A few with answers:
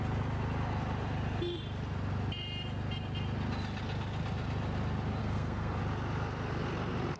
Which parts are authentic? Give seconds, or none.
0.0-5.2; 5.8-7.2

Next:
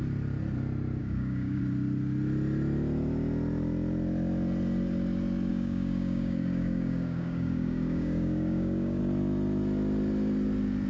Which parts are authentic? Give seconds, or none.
0.0-1.0; 1.6-5.5; 9.0-10.9

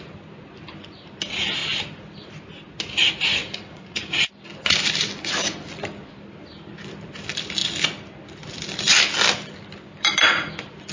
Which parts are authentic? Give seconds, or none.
0.0-3.4; 4.3-10.9